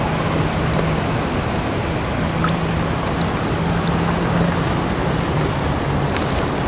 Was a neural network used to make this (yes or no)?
no